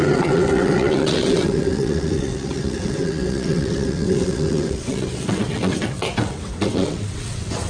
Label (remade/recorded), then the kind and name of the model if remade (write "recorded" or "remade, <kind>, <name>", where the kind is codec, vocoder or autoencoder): remade, vocoder, WaveNeXt